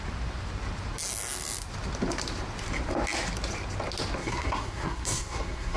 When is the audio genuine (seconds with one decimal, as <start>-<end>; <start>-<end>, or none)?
0.0-4.2